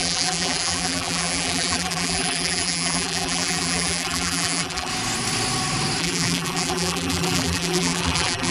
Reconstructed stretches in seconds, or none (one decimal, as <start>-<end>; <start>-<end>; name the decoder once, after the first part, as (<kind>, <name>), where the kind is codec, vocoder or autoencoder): 0.0-4.9 (vocoder, BigVGAN v2); 6.0-8.5